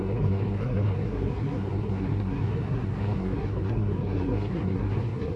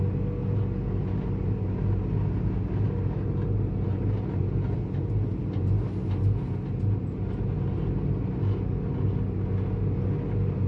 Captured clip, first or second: second